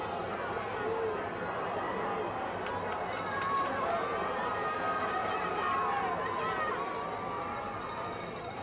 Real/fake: real